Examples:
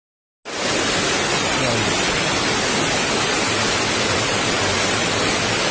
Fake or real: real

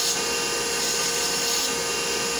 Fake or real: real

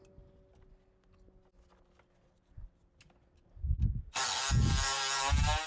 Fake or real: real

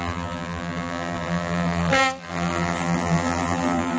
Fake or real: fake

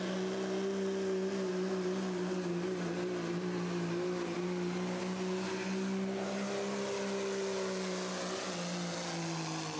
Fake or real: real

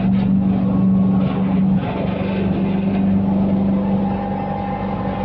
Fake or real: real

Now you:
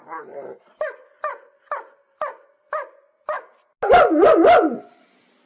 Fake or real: real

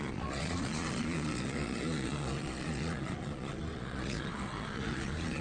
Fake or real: fake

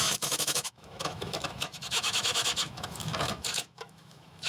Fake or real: fake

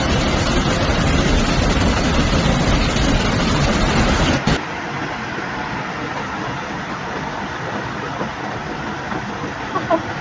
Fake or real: real